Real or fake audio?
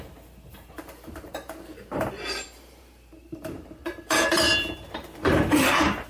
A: fake